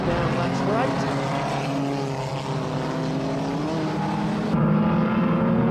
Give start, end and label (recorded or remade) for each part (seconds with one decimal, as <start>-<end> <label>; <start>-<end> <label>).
0.0-5.7 recorded